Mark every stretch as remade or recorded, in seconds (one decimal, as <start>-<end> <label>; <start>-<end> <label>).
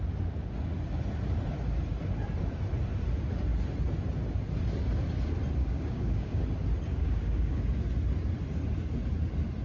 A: 0.0-5.6 recorded; 5.6-6.4 remade; 6.4-6.9 recorded; 6.9-7.6 remade; 7.6-9.6 recorded